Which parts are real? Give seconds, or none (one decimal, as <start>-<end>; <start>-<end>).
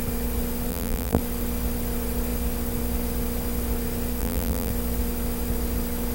0.0-0.7; 1.2-4.2; 4.7-6.1